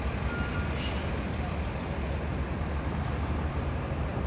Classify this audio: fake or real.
real